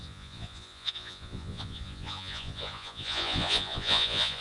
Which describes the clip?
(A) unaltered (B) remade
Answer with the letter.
B